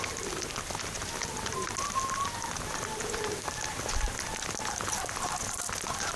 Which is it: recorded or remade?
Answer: recorded